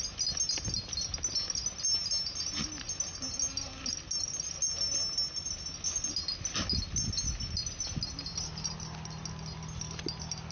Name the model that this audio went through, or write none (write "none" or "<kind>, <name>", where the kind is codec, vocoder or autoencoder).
none